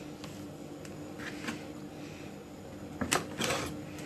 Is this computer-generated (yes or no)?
no